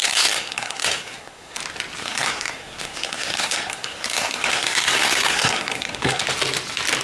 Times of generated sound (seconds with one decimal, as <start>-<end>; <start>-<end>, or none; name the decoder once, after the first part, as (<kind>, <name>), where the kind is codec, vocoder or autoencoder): 0.0-1.6 (codec, SNAC); 2.0-6.2